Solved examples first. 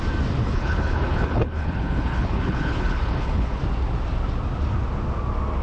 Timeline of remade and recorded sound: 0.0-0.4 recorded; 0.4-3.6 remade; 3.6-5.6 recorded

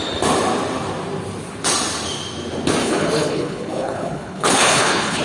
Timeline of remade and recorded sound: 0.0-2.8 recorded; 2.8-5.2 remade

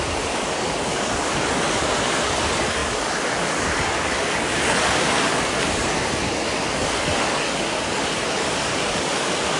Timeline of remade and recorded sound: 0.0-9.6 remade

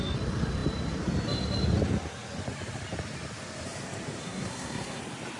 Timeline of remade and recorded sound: 0.0-4.2 recorded; 4.2-5.0 remade; 5.0-5.4 recorded

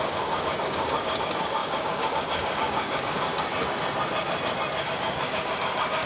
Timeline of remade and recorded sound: 0.0-3.3 remade; 3.3-4.8 recorded; 4.8-6.1 remade

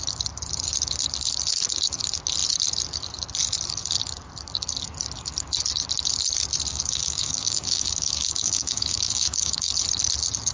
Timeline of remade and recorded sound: 0.0-6.7 recorded; 6.7-9.7 remade; 9.7-10.5 recorded